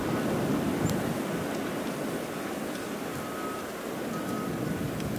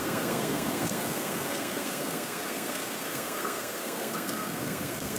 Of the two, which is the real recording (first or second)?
first